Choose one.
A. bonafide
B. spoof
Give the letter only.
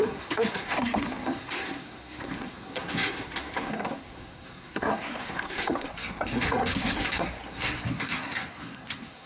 B